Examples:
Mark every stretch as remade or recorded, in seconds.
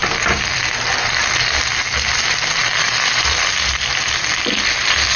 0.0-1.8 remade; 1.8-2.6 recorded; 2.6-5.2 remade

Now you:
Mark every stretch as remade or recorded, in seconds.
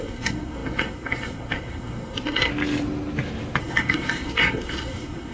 0.0-2.5 remade; 2.5-3.6 recorded; 3.6-5.3 remade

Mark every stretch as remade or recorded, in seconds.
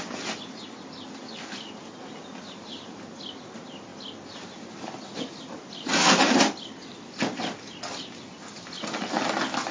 0.0-9.7 recorded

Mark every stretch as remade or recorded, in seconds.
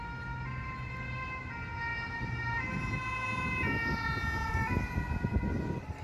0.0-6.0 recorded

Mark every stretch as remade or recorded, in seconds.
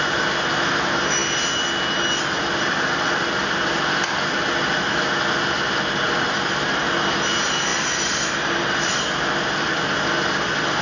0.0-10.8 recorded